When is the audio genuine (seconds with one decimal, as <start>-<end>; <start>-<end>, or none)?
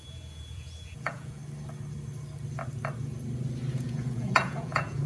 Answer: 1.4-3.7